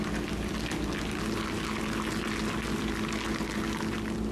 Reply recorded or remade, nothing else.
recorded